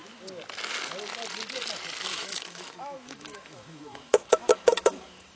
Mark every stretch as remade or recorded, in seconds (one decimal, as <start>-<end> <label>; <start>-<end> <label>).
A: 0.0-2.1 recorded; 2.1-5.4 remade